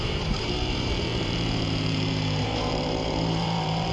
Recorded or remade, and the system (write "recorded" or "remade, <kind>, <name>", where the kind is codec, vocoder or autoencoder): remade, vocoder, BigVGAN v2